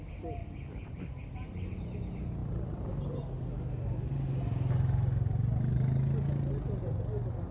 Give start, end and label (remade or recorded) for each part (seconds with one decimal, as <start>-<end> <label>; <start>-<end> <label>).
0.0-0.4 recorded; 0.4-1.2 remade; 1.2-2.4 recorded; 2.4-2.9 remade; 2.9-7.5 recorded